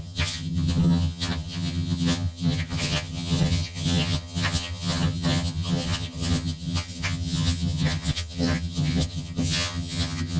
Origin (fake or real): fake